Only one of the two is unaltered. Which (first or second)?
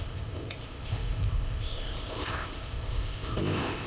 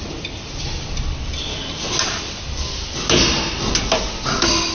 second